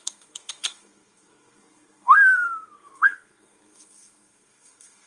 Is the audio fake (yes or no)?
yes